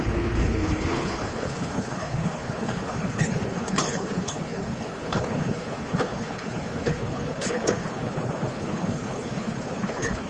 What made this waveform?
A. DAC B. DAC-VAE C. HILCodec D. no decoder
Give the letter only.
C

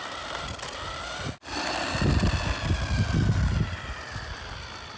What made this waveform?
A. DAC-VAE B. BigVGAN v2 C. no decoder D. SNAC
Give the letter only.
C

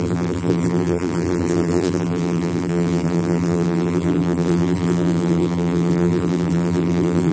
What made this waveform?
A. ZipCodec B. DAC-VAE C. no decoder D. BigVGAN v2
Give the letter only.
D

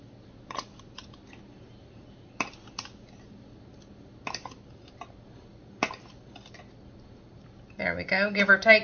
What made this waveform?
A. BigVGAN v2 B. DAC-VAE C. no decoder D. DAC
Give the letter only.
C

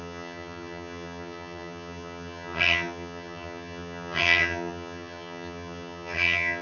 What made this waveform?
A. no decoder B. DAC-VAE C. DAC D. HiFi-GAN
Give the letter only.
D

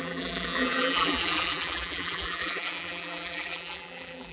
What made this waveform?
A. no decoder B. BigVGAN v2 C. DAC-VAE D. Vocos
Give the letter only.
B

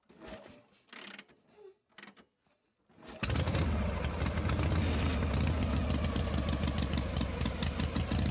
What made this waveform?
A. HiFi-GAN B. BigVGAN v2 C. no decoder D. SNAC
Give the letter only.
C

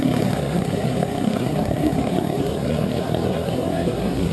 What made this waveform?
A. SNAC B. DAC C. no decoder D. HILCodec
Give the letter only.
A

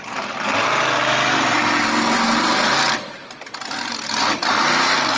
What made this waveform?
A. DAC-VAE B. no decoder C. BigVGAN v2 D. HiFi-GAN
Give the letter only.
B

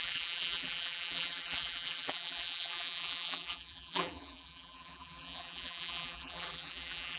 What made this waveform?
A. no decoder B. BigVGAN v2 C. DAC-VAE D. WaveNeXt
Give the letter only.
B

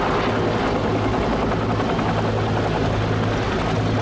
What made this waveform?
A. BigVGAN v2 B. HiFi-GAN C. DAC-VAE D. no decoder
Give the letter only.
D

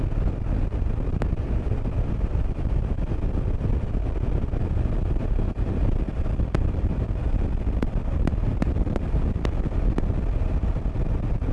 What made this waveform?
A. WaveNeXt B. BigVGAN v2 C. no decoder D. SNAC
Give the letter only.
C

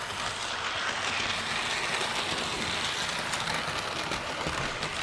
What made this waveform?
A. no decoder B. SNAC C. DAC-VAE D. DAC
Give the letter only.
A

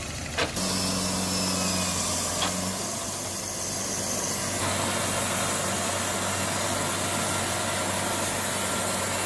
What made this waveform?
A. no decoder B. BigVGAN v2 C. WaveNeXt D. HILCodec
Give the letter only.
A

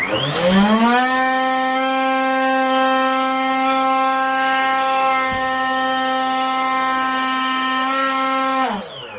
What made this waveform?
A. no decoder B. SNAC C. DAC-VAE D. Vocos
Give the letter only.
C